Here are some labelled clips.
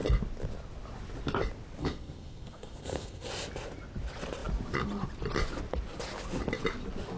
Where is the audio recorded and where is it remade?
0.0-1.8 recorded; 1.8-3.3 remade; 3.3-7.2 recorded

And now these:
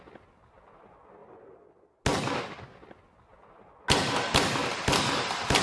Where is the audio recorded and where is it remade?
0.0-5.6 recorded